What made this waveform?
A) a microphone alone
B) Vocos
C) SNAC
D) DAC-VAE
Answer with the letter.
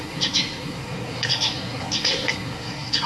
C